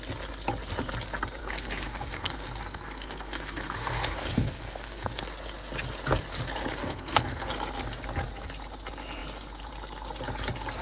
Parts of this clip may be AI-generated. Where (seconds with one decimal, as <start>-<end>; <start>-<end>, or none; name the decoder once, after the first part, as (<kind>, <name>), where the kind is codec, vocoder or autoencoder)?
1.4-5.2 (codec, SNAC); 6.8-7.5